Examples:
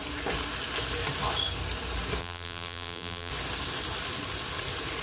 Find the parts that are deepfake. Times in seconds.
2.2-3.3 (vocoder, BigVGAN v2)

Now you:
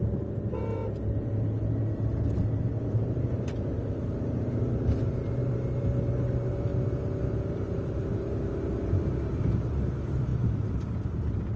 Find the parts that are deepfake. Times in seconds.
0.0-0.8 (vocoder, BigVGAN v2); 2.3-6.7; 7.5-11.6

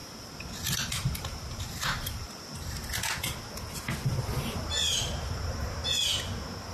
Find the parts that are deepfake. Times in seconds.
1.2-2.8 (vocoder, BigVGAN v2); 4.4-5.8

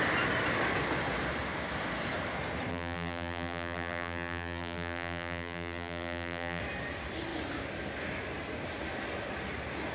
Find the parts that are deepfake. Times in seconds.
2.7-6.6 (vocoder, BigVGAN v2)

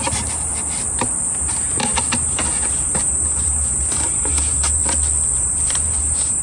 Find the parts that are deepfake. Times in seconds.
0.0-0.5 (vocoder, BigVGAN v2); 1.5-4.8; 5.3-6.4

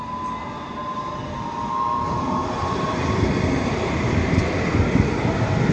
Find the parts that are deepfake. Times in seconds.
0.8-3.8 (vocoder, BigVGAN v2)

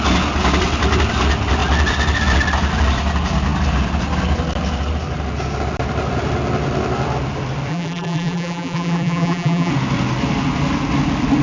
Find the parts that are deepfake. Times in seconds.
7.7-9.7 (vocoder, BigVGAN v2)

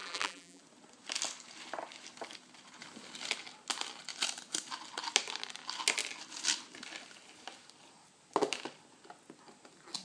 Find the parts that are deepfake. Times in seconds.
0.0-0.6 (vocoder, BigVGAN v2)